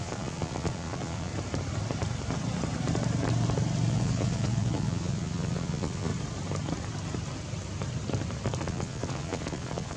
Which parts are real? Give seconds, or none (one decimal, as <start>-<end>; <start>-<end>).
1.3-3.9; 6.1-8.6